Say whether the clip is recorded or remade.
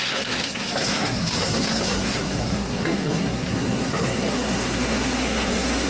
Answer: remade